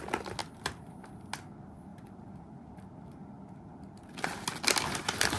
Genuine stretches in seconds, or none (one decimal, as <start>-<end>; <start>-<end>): 0.0-0.4; 1.0-1.9; 2.7-5.4